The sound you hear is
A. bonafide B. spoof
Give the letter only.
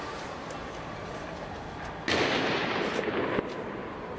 A